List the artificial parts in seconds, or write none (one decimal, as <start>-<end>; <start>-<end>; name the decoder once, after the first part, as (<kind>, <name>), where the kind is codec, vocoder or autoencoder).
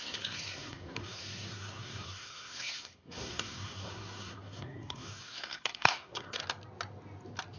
0.0-6.4 (codec, SNAC)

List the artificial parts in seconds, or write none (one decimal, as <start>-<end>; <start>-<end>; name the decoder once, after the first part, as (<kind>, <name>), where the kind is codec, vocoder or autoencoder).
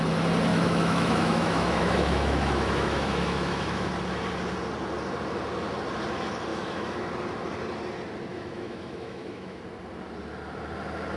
0.5-3.9 (autoencoder, DAC-VAE); 6.5-7.1; 8.3-9.6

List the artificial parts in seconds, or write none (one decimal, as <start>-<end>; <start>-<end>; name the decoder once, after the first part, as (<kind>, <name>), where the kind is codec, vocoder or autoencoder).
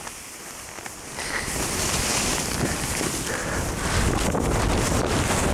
none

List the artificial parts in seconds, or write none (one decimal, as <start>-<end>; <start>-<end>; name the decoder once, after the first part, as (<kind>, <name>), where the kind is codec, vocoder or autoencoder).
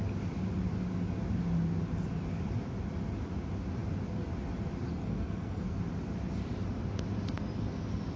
4.9-5.8 (codec, SNAC)